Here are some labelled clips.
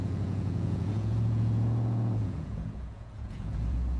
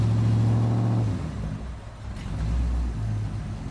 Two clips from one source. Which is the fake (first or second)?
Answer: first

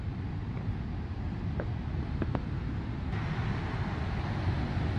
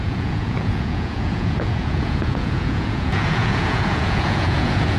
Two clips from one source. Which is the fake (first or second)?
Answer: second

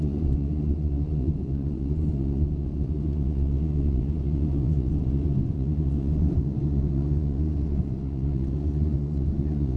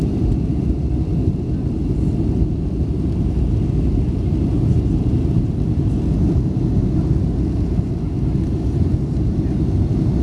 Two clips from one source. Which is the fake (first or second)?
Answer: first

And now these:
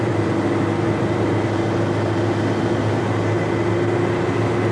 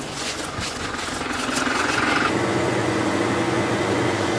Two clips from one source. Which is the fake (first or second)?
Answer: second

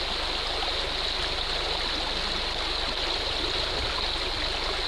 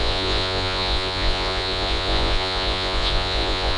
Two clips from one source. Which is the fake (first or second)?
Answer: second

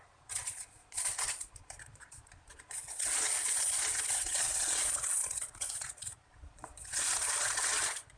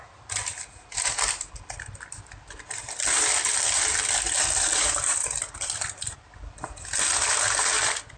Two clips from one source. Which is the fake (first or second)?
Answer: first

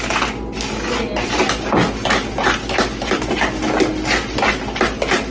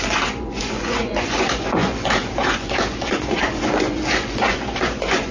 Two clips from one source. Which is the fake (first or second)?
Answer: second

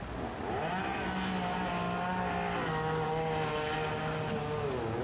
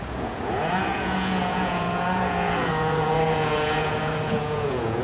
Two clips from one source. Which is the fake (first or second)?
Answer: second